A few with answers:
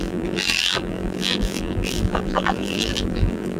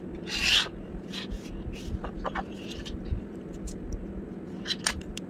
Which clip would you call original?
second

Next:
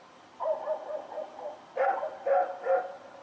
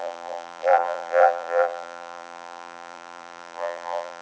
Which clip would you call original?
first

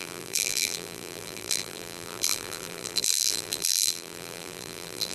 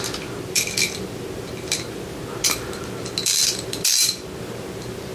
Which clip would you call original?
second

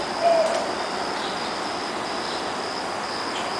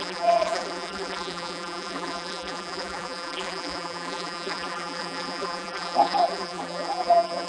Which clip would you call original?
first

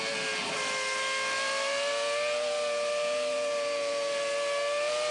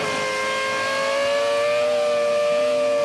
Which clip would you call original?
second